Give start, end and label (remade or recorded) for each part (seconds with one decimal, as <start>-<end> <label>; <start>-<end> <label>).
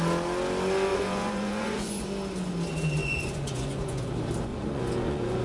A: 0.0-0.9 recorded; 0.9-2.0 remade; 2.0-3.0 recorded; 3.0-4.1 remade; 4.1-4.5 recorded; 4.5-5.4 remade